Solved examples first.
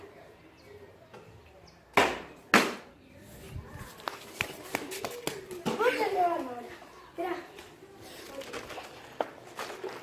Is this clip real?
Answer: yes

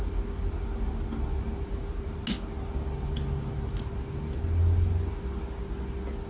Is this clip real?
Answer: yes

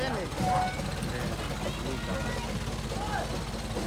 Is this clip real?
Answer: yes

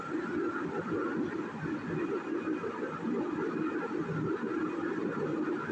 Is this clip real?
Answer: yes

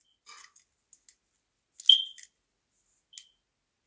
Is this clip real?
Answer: yes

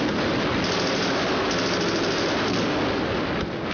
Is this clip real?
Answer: yes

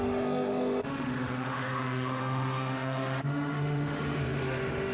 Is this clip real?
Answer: no